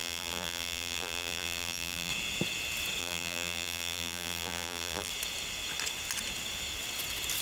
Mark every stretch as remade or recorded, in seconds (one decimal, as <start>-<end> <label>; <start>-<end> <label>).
0.0-2.1 remade; 2.1-3.0 recorded; 3.0-5.1 remade; 5.1-7.4 recorded